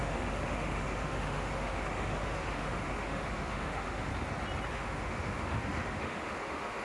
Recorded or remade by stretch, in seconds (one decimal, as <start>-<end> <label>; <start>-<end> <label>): 0.0-4.1 remade; 4.1-4.7 recorded; 4.7-6.8 remade